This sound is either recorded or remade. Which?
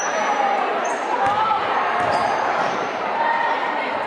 remade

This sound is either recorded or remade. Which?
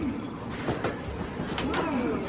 recorded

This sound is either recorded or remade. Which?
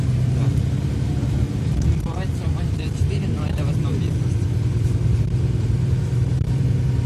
remade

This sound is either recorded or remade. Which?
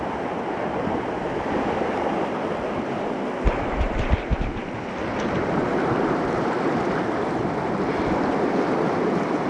recorded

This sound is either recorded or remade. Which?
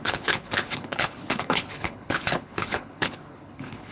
remade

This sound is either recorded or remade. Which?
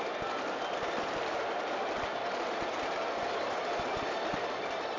recorded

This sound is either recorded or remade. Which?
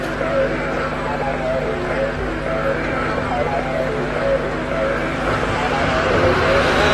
recorded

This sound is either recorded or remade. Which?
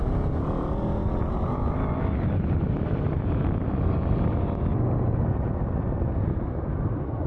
recorded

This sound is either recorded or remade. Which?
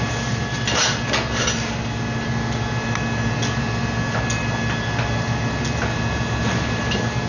recorded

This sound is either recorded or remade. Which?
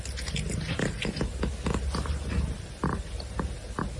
remade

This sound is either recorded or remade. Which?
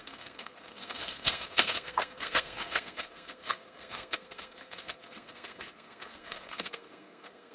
remade